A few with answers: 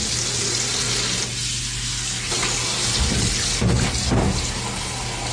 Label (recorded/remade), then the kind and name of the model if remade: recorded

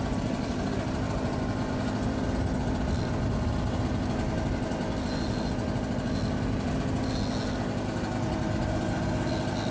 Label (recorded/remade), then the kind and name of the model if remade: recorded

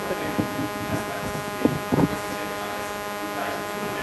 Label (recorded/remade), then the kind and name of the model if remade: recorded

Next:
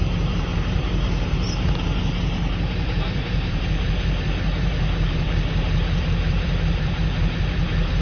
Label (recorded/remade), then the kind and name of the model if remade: remade, vocoder, BigVGAN v2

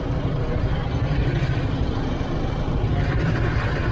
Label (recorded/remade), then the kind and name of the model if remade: recorded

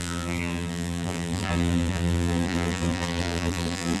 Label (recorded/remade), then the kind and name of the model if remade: remade, vocoder, BigVGAN v2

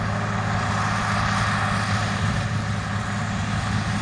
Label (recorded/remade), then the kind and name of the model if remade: recorded